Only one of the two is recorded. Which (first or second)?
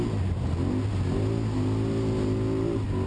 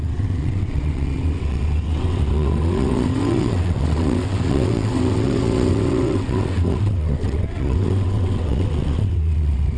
first